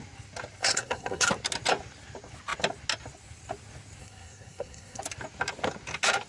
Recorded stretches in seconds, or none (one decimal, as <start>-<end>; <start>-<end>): 0.0-0.6; 1.3-4.0; 5.0-6.3